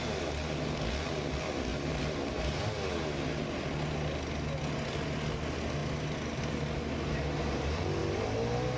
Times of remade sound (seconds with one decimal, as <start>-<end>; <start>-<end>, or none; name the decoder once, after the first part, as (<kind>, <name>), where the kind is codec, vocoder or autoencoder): 1.7-2.7 (vocoder, BigVGAN v2)